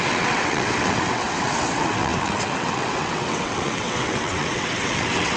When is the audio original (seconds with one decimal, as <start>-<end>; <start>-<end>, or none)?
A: none